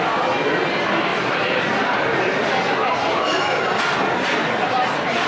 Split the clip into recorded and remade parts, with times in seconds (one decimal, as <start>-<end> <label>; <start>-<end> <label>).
0.0-1.1 recorded; 1.1-2.5 remade; 2.5-5.3 recorded